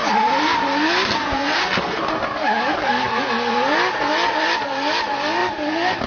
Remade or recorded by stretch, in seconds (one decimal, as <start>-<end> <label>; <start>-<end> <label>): 0.0-1.2 recorded; 1.2-2.0 remade; 2.0-6.1 recorded